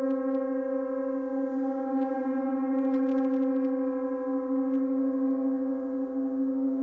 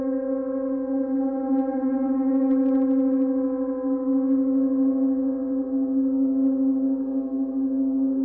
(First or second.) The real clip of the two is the first